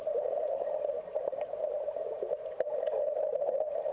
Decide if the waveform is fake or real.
real